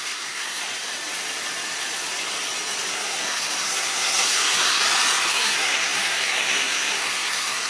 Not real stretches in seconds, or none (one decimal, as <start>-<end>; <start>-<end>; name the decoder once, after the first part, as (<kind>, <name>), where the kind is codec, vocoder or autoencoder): 0.0-0.6 (codec, SNAC); 2.9-4.8; 5.3-7.7